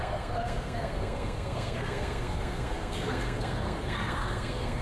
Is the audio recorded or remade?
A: remade